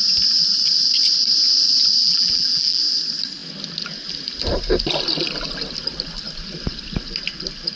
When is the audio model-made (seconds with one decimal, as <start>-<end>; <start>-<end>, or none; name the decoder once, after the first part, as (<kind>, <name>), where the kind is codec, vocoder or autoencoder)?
2.0-2.8 (vocoder, BigVGAN v2)